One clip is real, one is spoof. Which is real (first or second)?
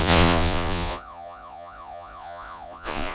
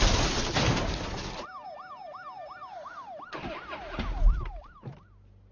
second